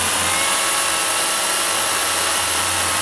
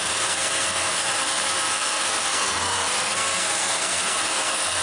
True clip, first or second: first